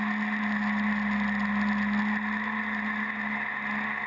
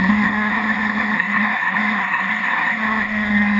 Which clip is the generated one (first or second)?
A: second